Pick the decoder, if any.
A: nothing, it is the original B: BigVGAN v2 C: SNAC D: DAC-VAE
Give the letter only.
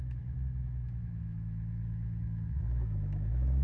D